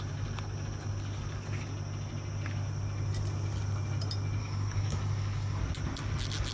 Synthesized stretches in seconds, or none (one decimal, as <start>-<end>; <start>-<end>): 4.4-5.6